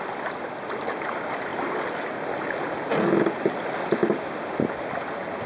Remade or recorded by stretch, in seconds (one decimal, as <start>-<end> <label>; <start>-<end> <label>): 0.0-1.5 recorded; 1.5-3.2 remade; 3.2-5.5 recorded